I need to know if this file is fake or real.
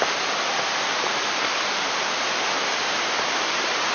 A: fake